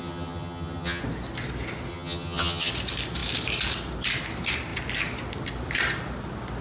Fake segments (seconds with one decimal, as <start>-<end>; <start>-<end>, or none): 0.0-1.0; 1.9-2.7